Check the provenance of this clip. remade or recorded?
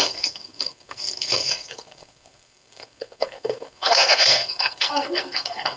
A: remade